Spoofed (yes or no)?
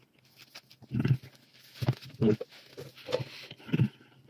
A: no